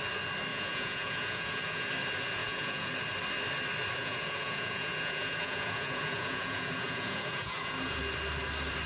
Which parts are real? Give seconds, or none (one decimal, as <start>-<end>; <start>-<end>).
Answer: 0.0-0.5; 1.9-2.4; 2.9-4.0; 8.0-8.9